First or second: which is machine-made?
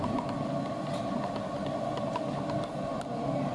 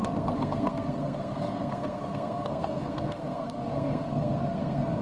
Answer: second